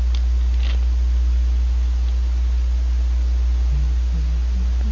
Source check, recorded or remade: recorded